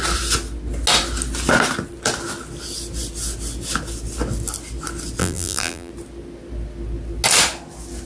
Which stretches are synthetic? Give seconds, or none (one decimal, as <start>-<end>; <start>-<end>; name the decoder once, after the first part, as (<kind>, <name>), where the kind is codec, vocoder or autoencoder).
5.2-5.9 (vocoder, BigVGAN v2)